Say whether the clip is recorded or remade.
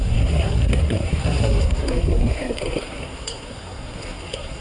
remade